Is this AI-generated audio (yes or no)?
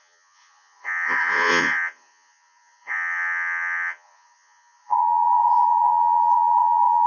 yes